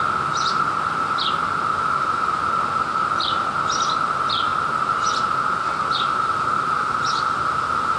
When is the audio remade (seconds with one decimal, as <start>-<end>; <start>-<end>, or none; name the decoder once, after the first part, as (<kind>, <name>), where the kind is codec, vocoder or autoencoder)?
none